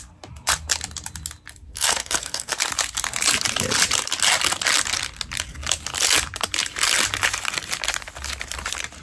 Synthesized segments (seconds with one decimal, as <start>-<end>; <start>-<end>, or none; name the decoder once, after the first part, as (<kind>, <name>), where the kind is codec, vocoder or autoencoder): 1.7-2.5 (codec, SNAC)